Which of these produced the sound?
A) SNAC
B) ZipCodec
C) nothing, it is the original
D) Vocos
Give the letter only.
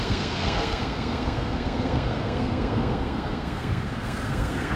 A